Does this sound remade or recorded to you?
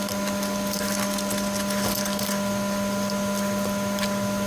recorded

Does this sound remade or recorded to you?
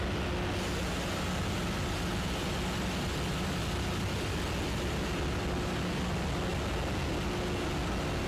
recorded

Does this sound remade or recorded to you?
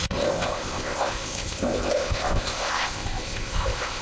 remade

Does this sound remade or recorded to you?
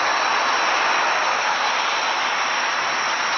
recorded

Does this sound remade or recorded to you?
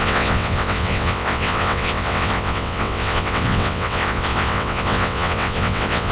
remade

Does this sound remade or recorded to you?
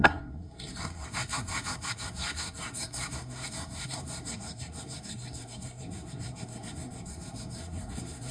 remade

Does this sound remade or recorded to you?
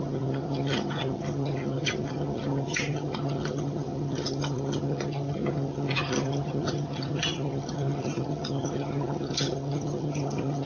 remade